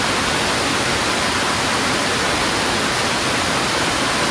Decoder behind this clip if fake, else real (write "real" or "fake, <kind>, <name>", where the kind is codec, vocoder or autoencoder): real